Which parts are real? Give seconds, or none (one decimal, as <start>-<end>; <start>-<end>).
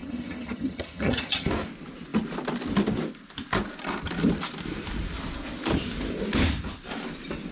1.5-7.5